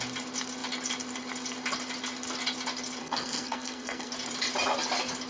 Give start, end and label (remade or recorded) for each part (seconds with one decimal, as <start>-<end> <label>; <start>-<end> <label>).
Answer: 0.0-3.0 recorded; 3.0-4.1 remade; 4.1-5.3 recorded